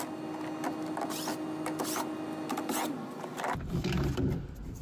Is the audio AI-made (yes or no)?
no